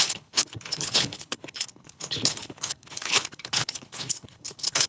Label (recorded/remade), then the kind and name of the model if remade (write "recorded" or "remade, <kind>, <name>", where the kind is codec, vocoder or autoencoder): remade, codec, HILCodec